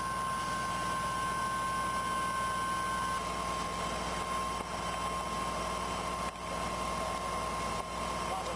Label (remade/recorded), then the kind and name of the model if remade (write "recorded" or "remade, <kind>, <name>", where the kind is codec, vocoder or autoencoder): recorded